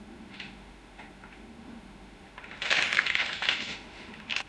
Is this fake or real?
fake